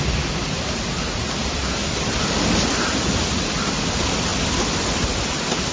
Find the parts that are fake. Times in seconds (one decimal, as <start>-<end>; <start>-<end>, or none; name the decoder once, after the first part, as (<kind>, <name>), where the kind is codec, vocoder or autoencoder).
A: 1.8-2.4 (vocoder, BigVGAN v2); 4.3-5.2